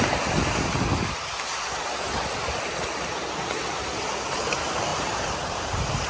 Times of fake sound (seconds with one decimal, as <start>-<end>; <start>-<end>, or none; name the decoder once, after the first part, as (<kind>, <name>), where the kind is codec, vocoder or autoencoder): 4.9-6.1 (vocoder, BigVGAN v2)